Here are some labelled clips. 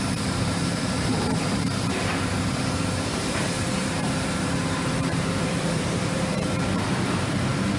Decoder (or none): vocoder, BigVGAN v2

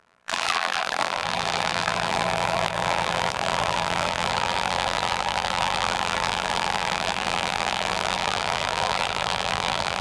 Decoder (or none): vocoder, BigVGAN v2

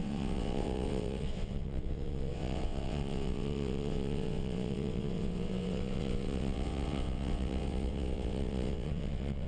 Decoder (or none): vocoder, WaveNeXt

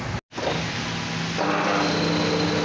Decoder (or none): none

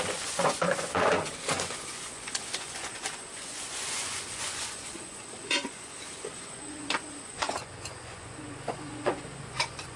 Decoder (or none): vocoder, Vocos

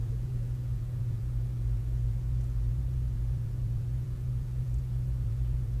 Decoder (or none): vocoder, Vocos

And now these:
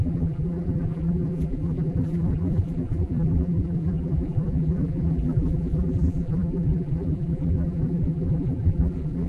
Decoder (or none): vocoder, BigVGAN v2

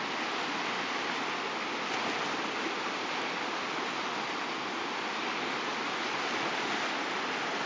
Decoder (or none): none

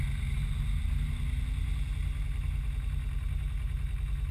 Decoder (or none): none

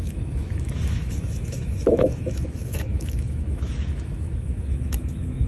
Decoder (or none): autoencoder, DAC-VAE